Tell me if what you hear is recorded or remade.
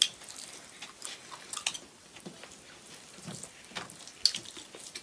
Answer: recorded